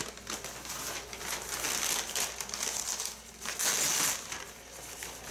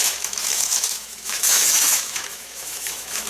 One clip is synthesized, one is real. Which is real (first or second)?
first